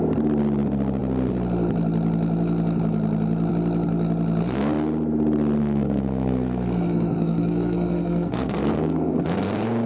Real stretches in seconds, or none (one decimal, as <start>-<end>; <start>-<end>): 0.0-5.6; 9.2-9.9